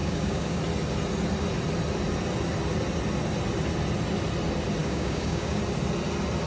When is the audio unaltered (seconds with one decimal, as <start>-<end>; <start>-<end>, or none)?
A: 0.6-4.8; 5.6-6.5